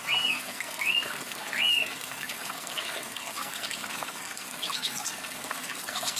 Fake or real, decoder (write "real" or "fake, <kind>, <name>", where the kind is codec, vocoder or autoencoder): fake, codec, SNAC